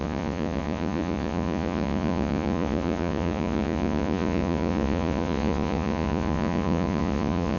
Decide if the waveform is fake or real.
fake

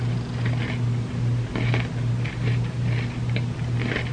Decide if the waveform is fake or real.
real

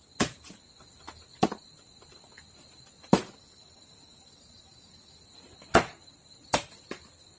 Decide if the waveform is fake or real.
real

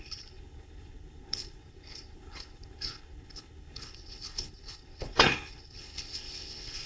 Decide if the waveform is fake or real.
fake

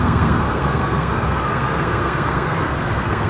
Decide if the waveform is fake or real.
fake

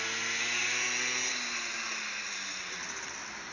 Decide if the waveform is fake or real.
real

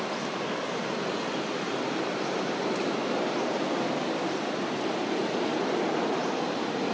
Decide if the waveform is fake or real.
real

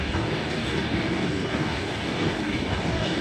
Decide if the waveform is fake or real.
fake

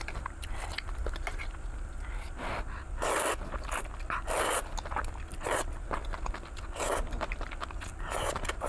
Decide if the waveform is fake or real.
real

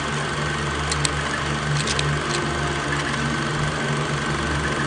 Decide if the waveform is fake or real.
real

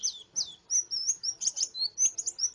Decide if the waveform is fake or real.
real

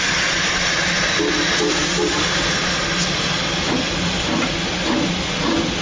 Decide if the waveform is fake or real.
real